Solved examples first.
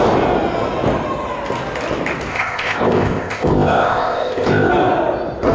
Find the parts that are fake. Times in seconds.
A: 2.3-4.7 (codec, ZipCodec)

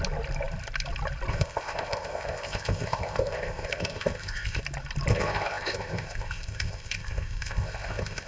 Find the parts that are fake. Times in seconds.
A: 1.3-4.6 (codec, ZipCodec); 5.1-8.3

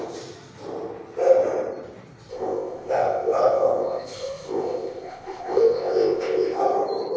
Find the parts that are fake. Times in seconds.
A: 2.3-6.6 (codec, ZipCodec)

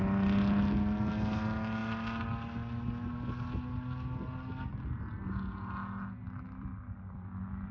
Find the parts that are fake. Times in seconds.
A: none

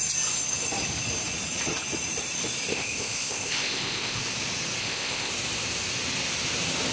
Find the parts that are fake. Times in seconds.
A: 2.7-4.2 (codec, ZipCodec); 4.8-5.3

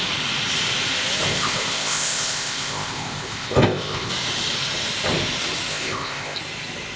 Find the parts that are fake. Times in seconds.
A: 1.3-4.1 (codec, ZipCodec); 5.7-6.4